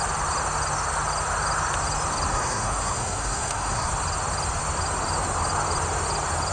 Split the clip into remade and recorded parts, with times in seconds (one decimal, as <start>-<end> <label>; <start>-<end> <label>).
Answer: 0.0-2.3 recorded; 2.3-3.9 remade; 3.9-6.5 recorded